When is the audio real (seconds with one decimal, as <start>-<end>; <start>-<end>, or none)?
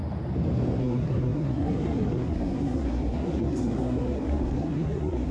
0.0-0.8